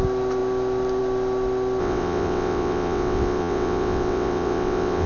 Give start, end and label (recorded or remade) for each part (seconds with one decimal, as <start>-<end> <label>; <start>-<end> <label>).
0.0-1.8 recorded; 1.8-5.1 remade